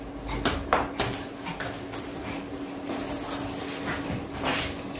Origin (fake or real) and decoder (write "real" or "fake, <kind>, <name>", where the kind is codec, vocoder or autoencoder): real